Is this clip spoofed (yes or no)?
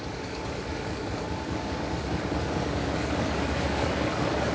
yes